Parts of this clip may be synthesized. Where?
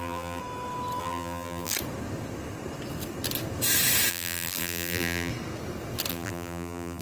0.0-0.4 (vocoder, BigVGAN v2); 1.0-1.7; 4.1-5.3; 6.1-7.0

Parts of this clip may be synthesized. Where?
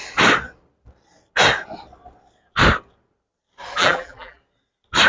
3.8-4.4 (vocoder, BigVGAN v2)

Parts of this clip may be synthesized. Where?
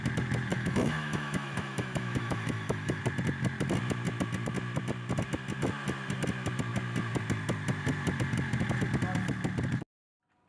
0.5-3.0 (autoencoder, DAC-VAE)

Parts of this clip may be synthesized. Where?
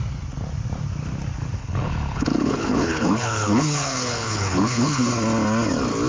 1.6-5.1 (codec, HILCodec)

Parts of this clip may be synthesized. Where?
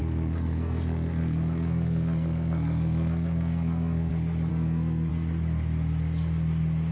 0.0-4.1 (codec, SNAC); 4.5-5.1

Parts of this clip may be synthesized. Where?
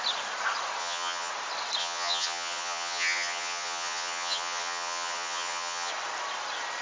0.8-1.3 (vocoder, HiFi-GAN); 1.8-5.9